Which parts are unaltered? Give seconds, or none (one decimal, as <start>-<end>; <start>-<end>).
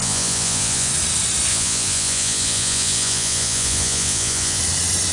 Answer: 0.9-1.5; 4.6-5.1